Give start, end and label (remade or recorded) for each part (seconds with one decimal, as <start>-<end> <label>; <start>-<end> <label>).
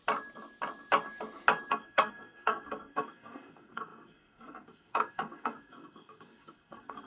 0.0-1.7 recorded; 1.7-7.1 remade